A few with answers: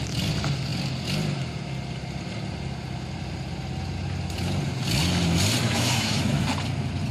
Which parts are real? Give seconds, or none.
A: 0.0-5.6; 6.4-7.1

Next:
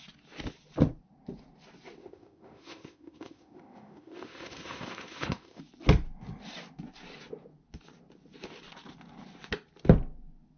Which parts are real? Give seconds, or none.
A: 0.0-2.0; 5.6-10.6

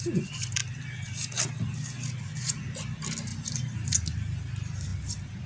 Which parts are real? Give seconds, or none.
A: 0.0-5.5